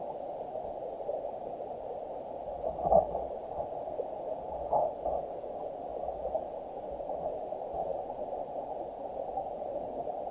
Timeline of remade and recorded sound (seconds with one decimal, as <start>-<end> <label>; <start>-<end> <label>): 0.0-10.3 recorded